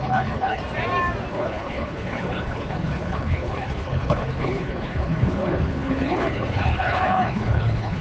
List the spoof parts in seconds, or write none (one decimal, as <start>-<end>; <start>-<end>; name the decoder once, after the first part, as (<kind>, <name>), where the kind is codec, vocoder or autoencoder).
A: 0.0-0.6 (codec, HILCodec); 1.3-8.0